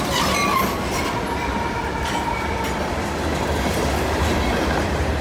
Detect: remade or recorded recorded